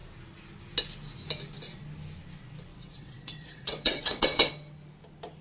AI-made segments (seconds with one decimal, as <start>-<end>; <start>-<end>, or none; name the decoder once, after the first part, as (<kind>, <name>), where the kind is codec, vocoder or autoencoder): 2.7-4.5 (vocoder, WaveNeXt)